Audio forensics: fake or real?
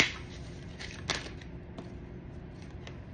real